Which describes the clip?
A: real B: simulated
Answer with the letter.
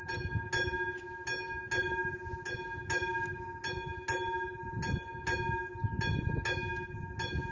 A